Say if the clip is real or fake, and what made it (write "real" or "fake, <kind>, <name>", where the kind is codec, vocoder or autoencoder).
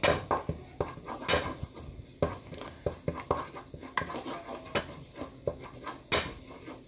real